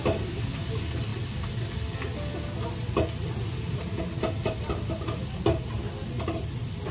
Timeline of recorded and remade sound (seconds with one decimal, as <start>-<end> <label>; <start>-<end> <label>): 0.0-6.9 recorded